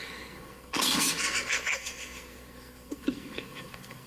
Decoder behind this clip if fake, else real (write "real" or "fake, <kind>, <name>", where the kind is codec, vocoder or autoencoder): fake, codec, SNAC